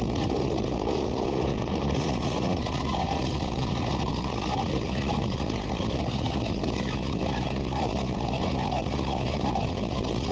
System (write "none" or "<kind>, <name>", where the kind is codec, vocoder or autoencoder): vocoder, Vocos